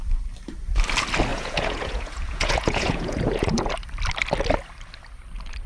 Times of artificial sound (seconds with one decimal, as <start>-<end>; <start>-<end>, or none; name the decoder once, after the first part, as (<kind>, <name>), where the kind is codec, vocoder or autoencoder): 1.3-3.7 (vocoder, Vocos)